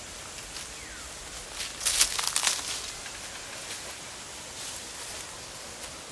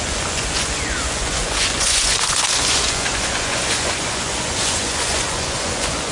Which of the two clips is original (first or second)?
first